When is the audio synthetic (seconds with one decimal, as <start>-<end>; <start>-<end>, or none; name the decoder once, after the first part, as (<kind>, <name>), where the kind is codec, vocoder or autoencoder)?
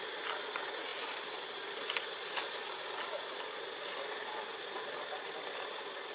none